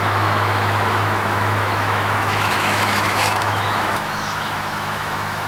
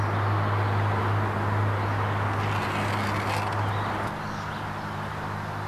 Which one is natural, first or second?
second